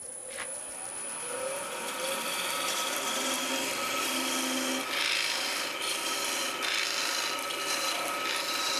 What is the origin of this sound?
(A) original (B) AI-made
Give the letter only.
A